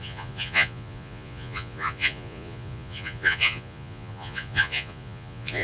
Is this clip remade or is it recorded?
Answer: remade